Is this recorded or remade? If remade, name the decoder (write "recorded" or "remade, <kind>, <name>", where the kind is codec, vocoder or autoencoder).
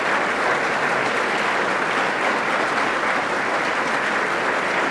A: recorded